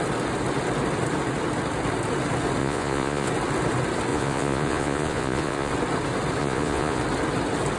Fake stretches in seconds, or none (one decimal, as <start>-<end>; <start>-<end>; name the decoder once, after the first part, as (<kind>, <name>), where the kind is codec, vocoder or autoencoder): 2.6-3.3 (vocoder, Vocos); 4.1-5.7; 6.4-7.0